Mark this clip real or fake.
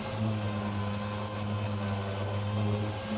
real